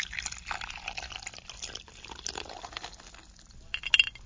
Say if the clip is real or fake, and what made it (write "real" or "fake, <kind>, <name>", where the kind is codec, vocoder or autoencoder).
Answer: real